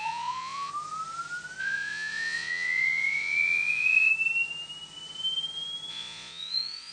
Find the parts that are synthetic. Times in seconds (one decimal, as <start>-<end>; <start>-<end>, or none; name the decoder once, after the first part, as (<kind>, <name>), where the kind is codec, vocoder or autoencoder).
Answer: 0.0-0.7 (vocoder, Vocos); 1.6-4.1; 5.9-6.9